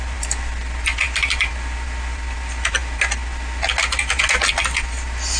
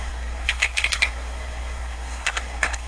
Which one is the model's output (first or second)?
second